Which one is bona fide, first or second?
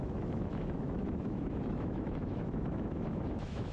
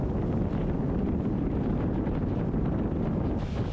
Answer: second